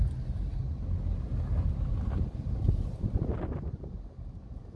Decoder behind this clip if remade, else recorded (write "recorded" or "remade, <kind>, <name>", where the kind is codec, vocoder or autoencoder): recorded